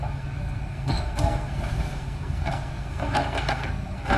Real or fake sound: fake